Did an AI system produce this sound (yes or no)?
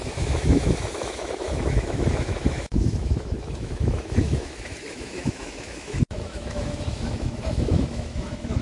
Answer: yes